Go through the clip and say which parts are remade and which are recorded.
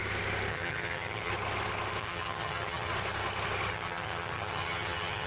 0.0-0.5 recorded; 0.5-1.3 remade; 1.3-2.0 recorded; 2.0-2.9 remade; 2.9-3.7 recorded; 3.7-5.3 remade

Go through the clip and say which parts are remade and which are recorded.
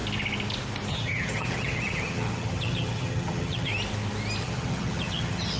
0.0-0.9 recorded; 0.9-3.7 remade; 3.7-4.4 recorded; 4.4-5.6 remade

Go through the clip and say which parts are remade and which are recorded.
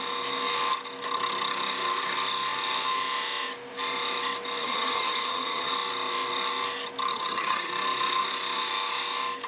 0.0-4.6 recorded; 4.6-5.7 remade; 5.7-7.1 recorded; 7.1-7.7 remade; 7.7-9.5 recorded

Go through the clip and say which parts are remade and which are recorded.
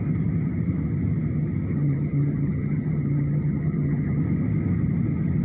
0.0-1.7 recorded; 1.7-4.2 remade; 4.2-5.4 recorded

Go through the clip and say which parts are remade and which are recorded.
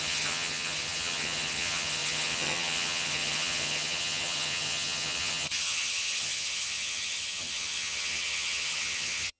0.0-9.4 remade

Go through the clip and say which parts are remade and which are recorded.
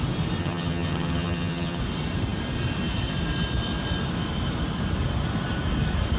0.0-0.4 recorded; 0.4-1.8 remade; 1.8-6.2 recorded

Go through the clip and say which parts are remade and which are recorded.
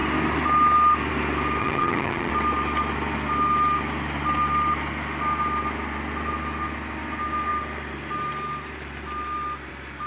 0.0-1.6 recorded; 1.6-2.3 remade; 2.3-10.1 recorded